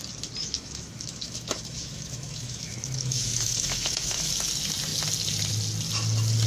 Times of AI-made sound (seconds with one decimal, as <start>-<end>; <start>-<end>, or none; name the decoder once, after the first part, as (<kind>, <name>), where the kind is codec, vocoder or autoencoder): 0.4-4.3 (autoencoder, DAC-VAE)